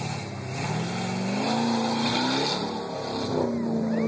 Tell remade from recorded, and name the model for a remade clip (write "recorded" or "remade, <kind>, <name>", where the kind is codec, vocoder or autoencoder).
recorded